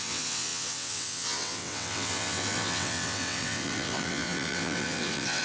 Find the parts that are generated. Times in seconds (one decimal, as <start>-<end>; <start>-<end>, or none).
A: 0.0-5.4